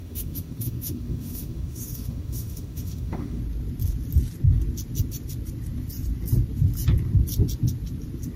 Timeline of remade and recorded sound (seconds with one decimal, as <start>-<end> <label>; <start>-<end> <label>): 0.0-3.4 remade; 3.4-8.4 recorded